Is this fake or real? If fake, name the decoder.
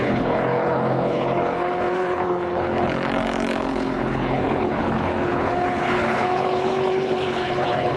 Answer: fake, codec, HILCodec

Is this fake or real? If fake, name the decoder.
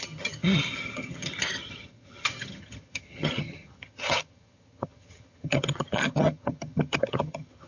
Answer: fake, vocoder, HiFi-GAN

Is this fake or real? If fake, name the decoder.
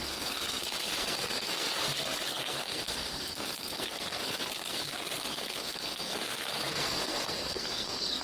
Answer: fake, codec, SNAC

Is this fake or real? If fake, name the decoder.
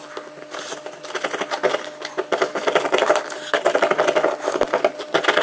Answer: real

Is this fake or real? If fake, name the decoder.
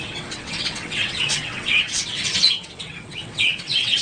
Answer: fake, vocoder, WaveNeXt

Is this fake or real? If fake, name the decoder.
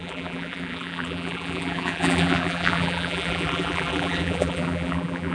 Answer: fake, vocoder, BigVGAN v2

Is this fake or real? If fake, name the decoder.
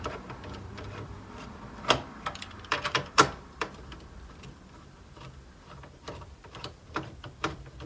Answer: fake, vocoder, BigVGAN v2